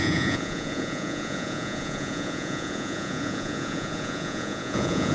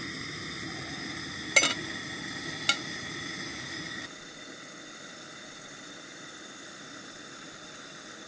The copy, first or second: first